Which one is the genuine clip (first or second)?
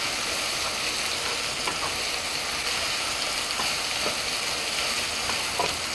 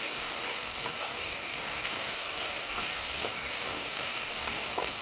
first